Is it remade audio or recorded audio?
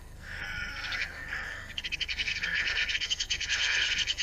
remade